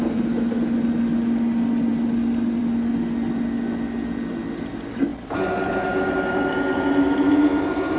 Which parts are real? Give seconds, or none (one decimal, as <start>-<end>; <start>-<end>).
0.0-8.0